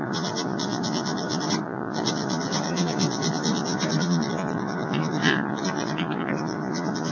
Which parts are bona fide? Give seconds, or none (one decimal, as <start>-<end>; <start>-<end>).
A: none